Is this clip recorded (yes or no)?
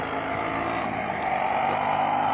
yes